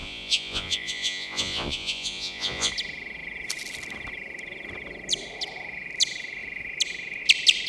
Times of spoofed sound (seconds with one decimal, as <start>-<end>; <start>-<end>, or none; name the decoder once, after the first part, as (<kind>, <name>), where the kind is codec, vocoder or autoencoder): 0.0-2.7 (vocoder, Vocos)